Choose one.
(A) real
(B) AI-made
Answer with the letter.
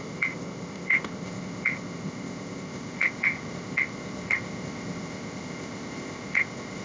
B